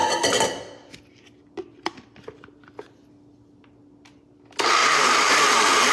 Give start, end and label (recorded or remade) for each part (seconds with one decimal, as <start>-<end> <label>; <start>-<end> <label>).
0.0-5.9 recorded